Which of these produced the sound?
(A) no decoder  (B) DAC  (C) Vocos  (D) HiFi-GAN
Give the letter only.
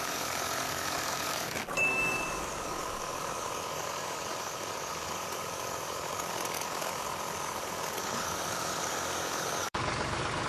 B